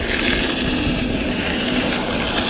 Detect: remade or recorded recorded